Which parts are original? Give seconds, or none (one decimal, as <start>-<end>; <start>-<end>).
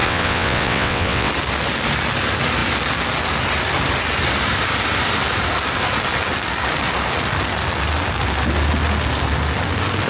1.3-10.1